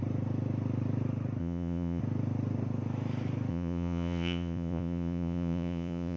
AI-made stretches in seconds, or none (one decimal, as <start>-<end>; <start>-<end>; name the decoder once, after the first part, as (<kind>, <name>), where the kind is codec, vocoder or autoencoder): 1.4-2.0 (vocoder, Vocos); 3.5-6.2